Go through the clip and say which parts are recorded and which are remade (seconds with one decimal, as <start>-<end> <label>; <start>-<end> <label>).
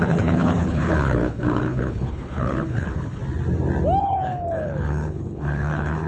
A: 0.0-3.2 remade; 3.2-4.0 recorded; 4.0-6.1 remade